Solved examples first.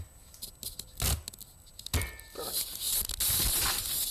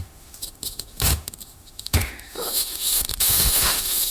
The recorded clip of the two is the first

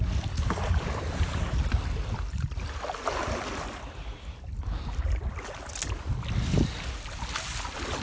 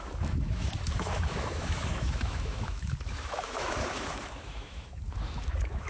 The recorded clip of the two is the first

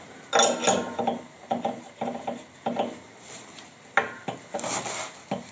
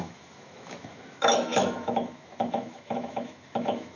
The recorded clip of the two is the first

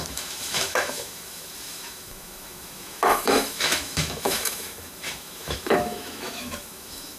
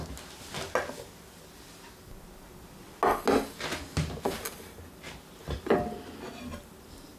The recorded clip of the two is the second